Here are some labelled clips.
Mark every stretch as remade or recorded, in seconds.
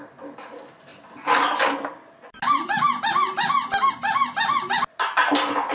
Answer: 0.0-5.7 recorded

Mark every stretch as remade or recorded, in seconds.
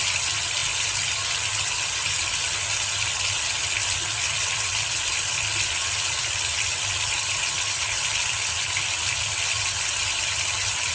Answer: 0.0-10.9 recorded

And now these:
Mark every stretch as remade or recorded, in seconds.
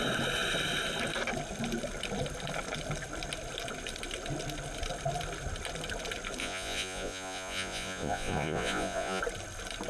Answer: 0.0-6.4 recorded; 6.4-9.2 remade; 9.2-9.9 recorded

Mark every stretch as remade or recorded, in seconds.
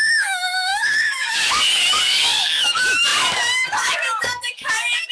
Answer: 0.0-5.1 remade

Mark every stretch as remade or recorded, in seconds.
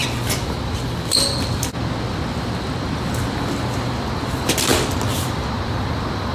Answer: 0.0-6.3 remade